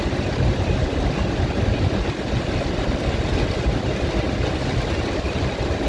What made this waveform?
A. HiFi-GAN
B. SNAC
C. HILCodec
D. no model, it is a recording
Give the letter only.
D